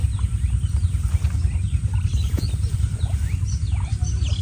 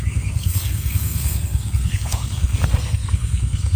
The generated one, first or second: second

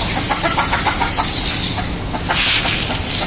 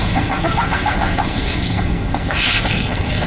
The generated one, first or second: second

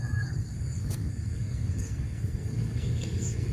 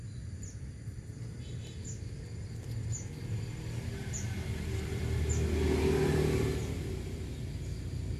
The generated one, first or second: first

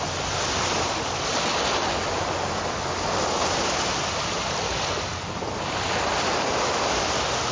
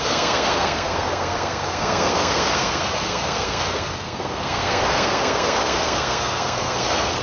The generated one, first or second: second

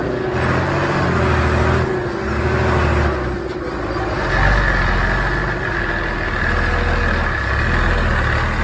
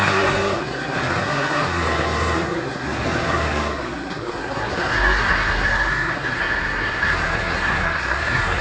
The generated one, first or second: second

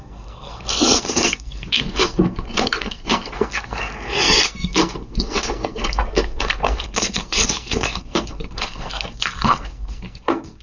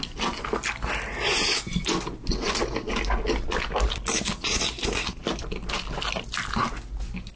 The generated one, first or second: first